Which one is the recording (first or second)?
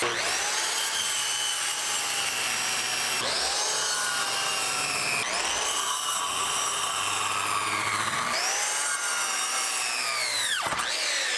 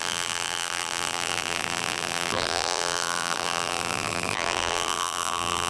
first